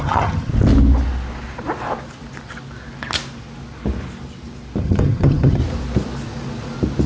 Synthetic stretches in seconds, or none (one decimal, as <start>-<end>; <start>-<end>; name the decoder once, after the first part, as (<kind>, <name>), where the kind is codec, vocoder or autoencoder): 0.0-0.5 (vocoder, HiFi-GAN); 4.8-5.6